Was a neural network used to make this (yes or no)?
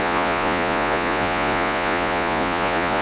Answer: yes